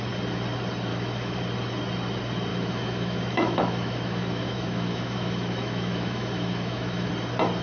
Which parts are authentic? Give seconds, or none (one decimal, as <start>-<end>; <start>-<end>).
0.0-0.9; 1.4-2.5; 7.1-7.6